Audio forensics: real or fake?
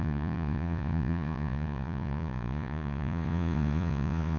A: fake